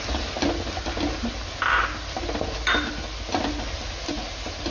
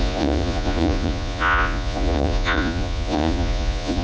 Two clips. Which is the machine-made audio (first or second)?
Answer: second